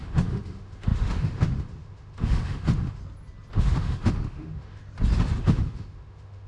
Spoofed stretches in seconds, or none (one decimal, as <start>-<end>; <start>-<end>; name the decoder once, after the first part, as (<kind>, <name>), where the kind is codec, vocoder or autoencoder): 0.0-3.0 (autoencoder, DAC-VAE); 3.5-4.8; 5.3-6.5